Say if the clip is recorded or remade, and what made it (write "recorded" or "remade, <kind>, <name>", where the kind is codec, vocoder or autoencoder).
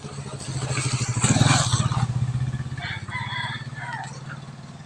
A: recorded